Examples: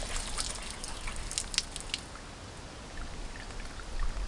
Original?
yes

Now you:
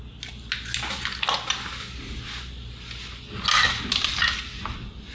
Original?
yes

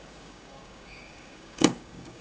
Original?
no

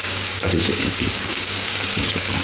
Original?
no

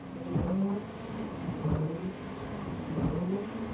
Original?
yes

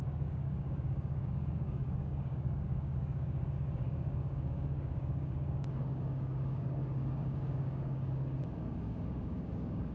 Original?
no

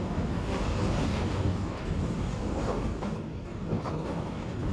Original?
no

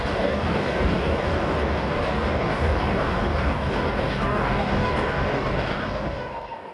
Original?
no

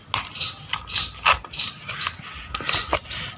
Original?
yes